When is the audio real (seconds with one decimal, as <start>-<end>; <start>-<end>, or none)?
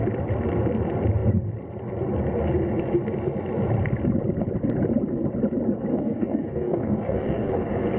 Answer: 0.0-5.9; 7.6-8.0